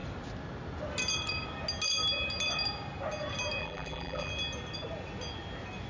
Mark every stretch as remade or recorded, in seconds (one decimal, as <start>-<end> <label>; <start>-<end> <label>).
0.0-3.6 recorded; 3.6-4.3 remade; 4.3-5.9 recorded